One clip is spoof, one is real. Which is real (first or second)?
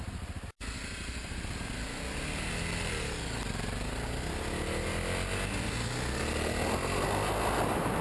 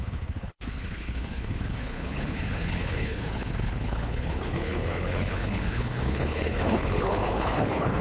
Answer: first